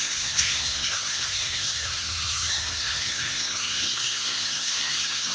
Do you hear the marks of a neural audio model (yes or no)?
yes